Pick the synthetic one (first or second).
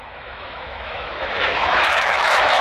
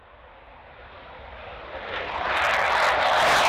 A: first